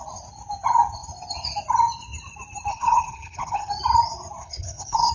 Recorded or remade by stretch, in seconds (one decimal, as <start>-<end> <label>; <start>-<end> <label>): 0.0-2.7 recorded; 2.7-3.7 remade; 3.7-4.4 recorded; 4.4-5.1 remade